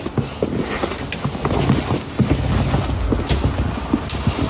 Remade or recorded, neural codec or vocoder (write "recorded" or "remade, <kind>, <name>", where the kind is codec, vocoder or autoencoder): recorded